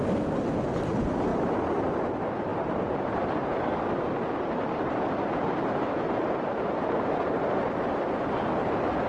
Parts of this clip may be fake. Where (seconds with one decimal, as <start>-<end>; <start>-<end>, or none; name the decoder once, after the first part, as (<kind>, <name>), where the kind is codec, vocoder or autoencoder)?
1.3-1.9 (vocoder, BigVGAN v2); 2.5-7.5